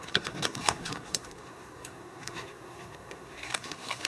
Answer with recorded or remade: remade